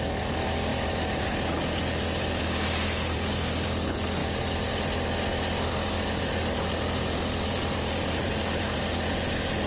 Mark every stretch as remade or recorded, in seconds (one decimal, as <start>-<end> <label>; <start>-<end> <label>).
0.0-9.7 recorded